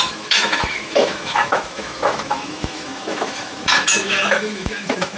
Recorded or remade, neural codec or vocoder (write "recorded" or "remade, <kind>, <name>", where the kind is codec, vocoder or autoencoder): remade, autoencoder, DAC-VAE